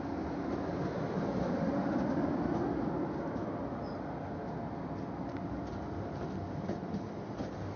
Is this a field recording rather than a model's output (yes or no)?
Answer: yes